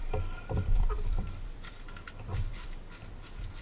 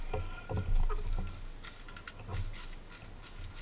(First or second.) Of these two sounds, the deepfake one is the first